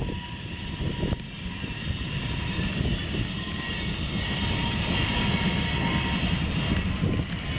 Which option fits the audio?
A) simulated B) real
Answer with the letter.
B